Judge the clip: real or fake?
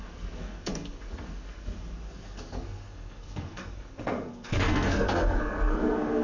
fake